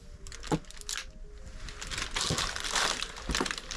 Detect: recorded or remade recorded